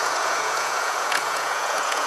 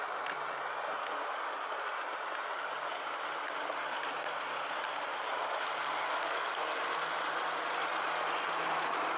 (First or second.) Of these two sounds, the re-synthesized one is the first